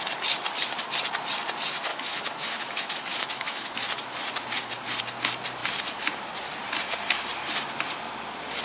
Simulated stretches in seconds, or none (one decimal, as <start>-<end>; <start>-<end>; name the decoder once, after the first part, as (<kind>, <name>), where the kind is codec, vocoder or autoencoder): 1.9-3.7 (autoencoder, DAC-VAE)